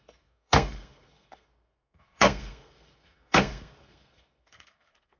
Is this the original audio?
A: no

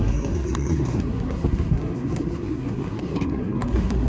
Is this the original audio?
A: no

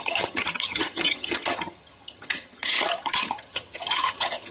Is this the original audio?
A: no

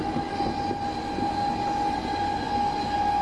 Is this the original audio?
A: yes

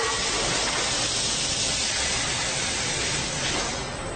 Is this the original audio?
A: yes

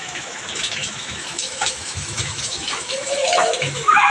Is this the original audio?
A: no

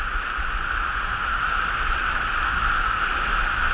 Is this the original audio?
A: yes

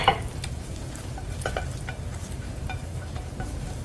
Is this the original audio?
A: no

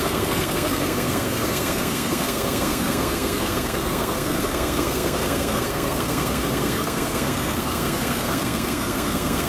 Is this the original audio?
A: no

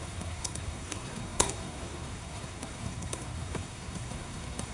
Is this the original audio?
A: no